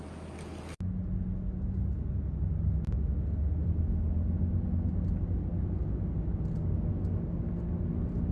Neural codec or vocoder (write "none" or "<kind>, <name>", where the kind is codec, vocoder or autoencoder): none